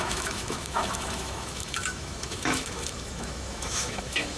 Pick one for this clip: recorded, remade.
remade